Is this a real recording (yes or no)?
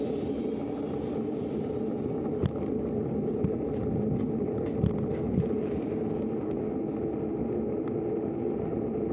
yes